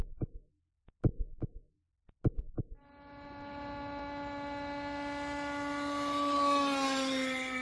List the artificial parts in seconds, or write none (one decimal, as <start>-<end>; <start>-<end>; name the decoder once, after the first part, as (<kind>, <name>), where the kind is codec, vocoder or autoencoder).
none